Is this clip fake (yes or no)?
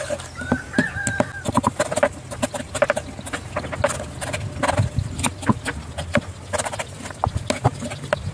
no